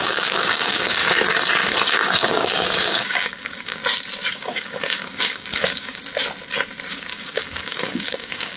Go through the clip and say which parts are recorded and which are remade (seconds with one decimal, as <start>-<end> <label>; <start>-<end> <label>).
0.0-1.0 remade; 1.0-1.9 recorded; 1.9-3.8 remade; 3.8-4.3 recorded; 4.3-6.0 remade; 6.0-6.9 recorded; 6.9-8.6 remade